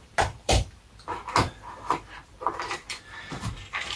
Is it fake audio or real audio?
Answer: fake